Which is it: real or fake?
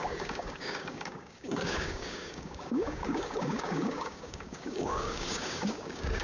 fake